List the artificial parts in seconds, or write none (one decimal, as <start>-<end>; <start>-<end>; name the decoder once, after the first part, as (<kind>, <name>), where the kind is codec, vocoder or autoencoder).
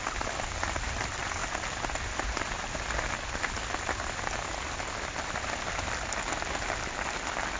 none